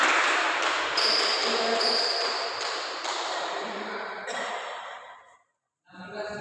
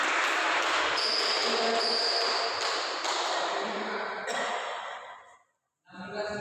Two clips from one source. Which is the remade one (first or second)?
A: first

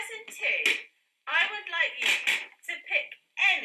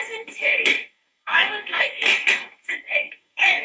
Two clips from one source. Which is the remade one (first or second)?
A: second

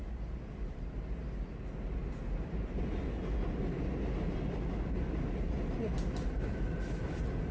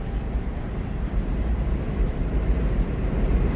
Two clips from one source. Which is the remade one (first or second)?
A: second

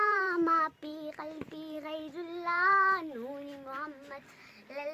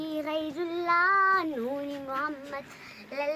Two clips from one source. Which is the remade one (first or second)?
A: first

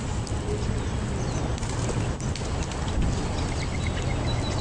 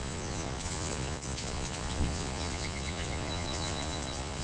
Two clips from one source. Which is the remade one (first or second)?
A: second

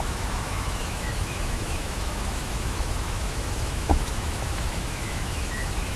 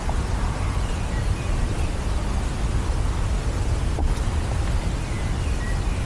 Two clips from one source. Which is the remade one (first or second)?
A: first